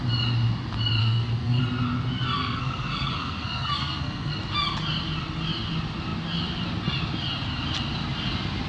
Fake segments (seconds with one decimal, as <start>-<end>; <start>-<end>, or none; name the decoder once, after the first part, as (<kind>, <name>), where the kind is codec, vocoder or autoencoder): 1.0-1.6 (codec, SNAC); 2.4-4.3